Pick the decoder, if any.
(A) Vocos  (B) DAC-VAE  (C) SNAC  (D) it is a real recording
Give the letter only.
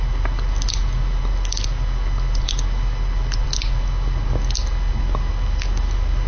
D